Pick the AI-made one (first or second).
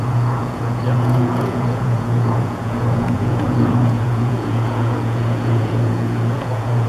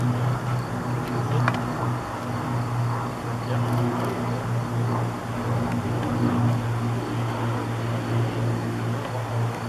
first